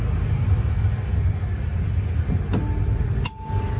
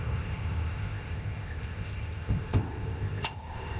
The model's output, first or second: second